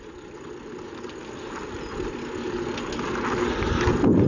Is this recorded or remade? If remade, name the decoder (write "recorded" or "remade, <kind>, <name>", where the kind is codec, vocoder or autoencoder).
recorded